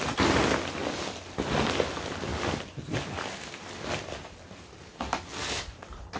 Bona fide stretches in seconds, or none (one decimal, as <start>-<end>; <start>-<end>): 0.0-6.2